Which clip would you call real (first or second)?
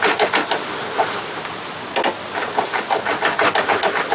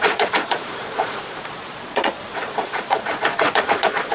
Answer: first